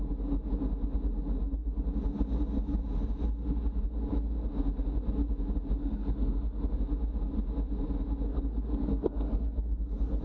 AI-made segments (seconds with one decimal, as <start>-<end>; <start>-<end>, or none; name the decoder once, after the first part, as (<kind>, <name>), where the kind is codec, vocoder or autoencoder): 5.8-6.7 (codec, SNAC); 8.3-10.2